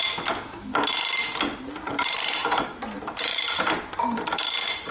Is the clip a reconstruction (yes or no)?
no